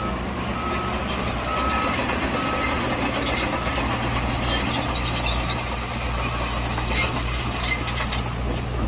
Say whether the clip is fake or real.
real